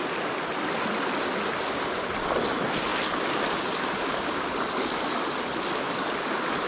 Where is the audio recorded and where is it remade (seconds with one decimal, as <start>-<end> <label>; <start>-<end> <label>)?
0.0-6.7 recorded